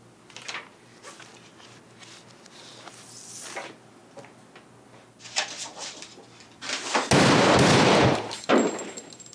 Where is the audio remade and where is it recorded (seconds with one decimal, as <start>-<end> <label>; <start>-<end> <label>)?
0.0-9.3 recorded